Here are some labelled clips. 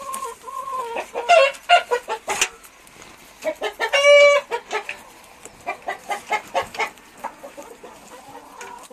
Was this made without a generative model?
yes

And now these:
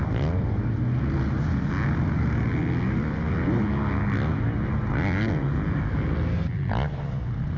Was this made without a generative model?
yes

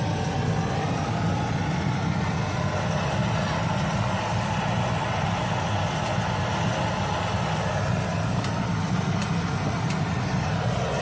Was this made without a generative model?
yes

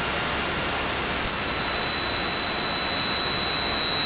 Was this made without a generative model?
yes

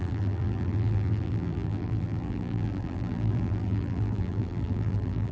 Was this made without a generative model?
no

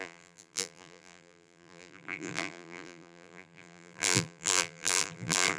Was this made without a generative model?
no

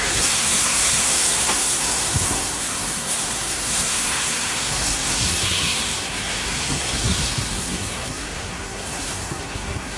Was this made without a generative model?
no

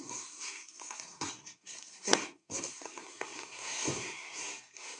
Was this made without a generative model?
no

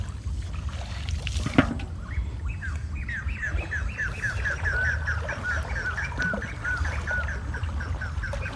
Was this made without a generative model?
yes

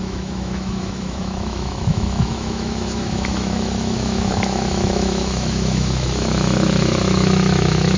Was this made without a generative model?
no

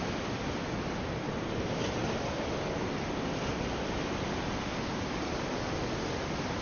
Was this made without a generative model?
yes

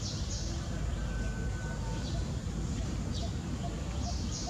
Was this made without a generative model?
yes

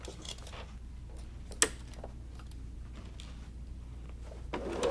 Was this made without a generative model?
yes